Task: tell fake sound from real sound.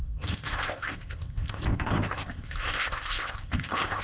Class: fake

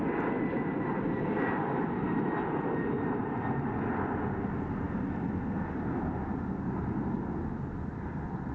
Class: real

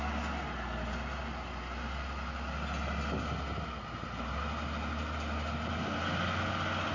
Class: real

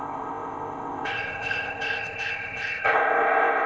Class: fake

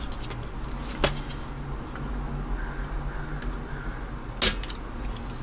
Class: real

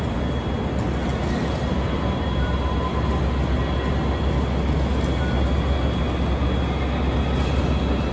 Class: real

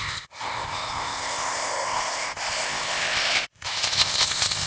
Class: fake